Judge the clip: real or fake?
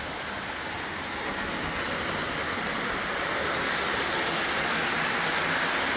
real